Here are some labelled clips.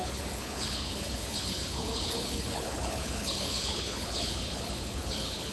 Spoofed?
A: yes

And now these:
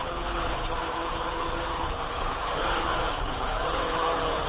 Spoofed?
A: yes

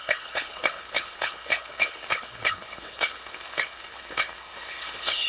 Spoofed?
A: yes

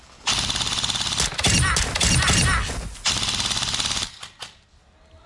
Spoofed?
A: no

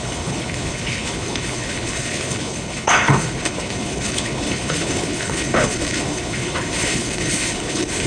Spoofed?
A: yes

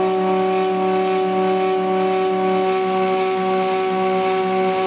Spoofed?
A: no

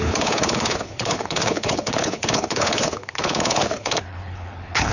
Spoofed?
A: yes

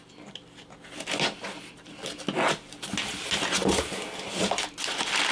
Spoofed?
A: no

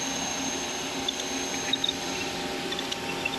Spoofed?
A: no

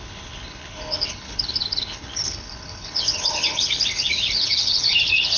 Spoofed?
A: yes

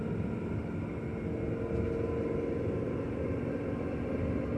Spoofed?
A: no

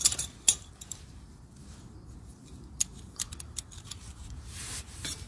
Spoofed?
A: no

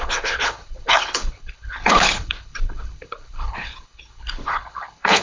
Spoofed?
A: yes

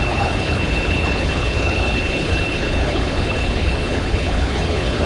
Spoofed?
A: yes